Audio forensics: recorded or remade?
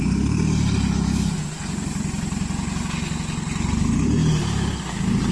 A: recorded